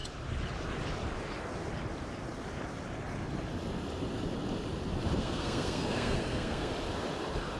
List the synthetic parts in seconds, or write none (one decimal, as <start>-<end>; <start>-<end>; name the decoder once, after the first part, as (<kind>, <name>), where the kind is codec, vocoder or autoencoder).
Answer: 5.2-6.7 (codec, SNAC)